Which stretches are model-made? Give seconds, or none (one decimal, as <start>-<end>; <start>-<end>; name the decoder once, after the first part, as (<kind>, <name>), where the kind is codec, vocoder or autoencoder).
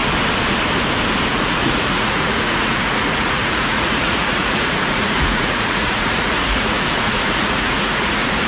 1.3-8.5 (vocoder, Vocos)